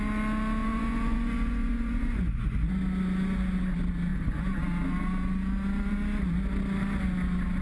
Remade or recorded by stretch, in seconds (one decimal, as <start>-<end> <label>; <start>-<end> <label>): 0.0-0.6 recorded; 0.6-2.7 remade; 2.7-4.1 recorded; 4.1-4.6 remade; 4.6-7.6 recorded